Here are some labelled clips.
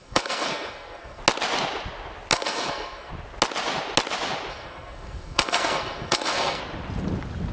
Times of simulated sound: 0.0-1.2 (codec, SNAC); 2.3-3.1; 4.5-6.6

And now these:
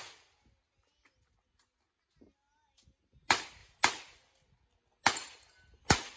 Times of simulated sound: none

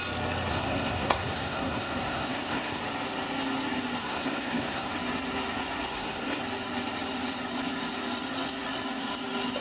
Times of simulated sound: 0.5-2.8 (codec, SNAC); 4.0-4.9; 5.9-6.4